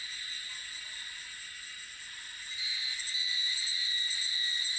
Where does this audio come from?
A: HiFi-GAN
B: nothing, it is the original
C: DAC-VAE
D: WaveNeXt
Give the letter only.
B